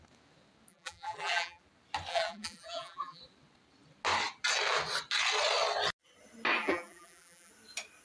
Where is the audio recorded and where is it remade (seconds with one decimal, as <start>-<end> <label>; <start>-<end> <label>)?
0.0-0.7 recorded; 0.7-1.6 remade; 1.6-2.1 recorded; 2.1-3.2 remade; 3.2-6.6 recorded; 6.6-7.5 remade; 7.5-8.0 recorded